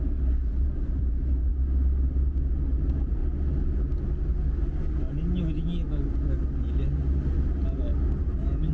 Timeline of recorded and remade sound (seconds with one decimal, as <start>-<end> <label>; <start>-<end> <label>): 0.0-1.5 remade; 1.5-2.7 recorded; 2.7-3.2 remade; 3.2-8.2 recorded; 8.2-8.7 remade